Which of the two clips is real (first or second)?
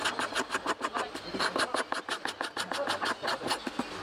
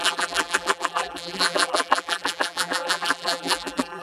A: first